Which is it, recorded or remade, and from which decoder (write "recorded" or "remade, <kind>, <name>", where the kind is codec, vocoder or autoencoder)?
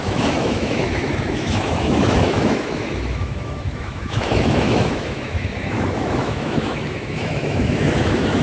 remade, autoencoder, DAC-VAE